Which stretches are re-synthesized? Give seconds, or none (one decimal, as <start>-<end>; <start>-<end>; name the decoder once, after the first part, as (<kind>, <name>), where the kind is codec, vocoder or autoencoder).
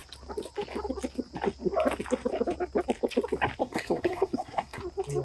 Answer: 3.6-4.8 (codec, SNAC)